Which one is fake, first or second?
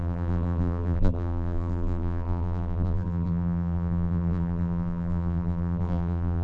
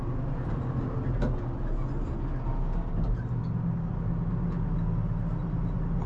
first